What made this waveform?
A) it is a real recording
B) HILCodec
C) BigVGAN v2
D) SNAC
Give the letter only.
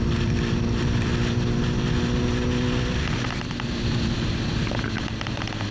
A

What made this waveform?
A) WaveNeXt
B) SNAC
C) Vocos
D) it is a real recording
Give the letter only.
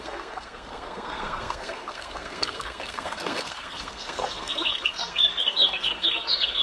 B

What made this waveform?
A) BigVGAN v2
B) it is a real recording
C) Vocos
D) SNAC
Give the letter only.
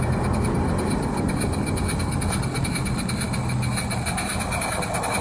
B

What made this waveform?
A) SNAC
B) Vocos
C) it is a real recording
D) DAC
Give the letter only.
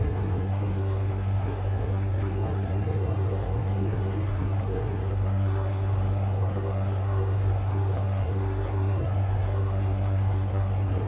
A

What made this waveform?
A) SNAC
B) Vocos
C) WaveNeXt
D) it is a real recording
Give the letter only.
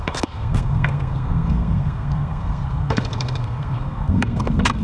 A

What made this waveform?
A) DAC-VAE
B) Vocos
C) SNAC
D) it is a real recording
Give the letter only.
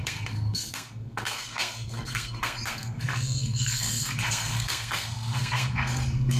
C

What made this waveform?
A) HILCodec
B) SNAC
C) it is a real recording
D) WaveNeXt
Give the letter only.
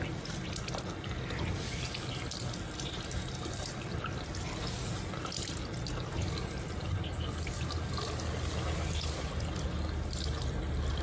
C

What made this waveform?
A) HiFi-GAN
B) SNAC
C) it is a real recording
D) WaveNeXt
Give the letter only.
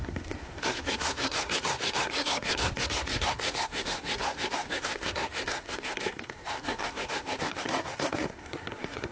B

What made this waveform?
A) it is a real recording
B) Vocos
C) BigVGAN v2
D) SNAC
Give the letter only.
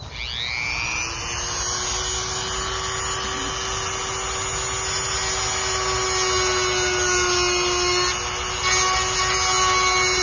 A